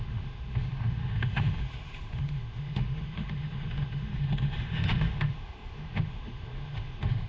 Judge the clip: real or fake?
fake